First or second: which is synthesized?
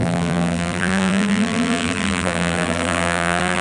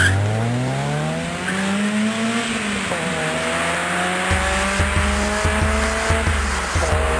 first